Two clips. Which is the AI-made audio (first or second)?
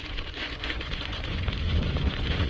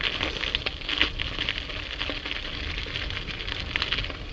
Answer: first